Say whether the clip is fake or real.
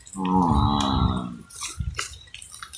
real